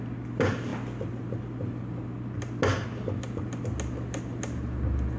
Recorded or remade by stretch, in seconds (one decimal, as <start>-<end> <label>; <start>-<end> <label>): 0.0-5.2 recorded